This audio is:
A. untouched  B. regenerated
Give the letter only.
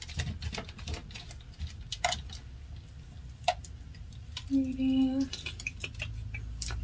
A